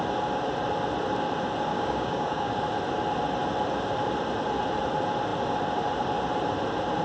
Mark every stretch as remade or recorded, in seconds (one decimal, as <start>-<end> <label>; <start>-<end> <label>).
0.0-1.7 recorded; 1.7-2.5 remade; 2.5-7.0 recorded